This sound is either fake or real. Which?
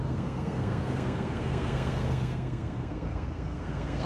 fake